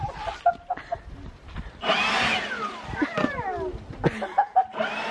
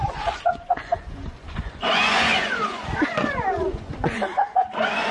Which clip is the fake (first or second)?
second